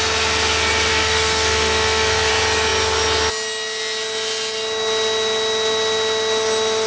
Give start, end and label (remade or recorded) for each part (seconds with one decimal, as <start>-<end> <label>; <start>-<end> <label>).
0.0-0.9 recorded; 0.9-2.3 remade; 2.3-6.9 recorded

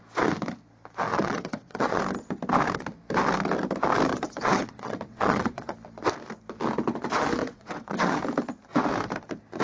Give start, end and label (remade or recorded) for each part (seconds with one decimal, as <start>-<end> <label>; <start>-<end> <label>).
0.0-1.1 recorded; 1.1-2.0 remade; 2.0-4.1 recorded; 4.1-5.7 remade; 5.7-7.4 recorded; 7.4-8.2 remade; 8.2-9.6 recorded